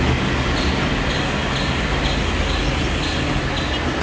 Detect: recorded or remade recorded